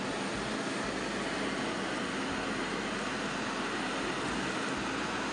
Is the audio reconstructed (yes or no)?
no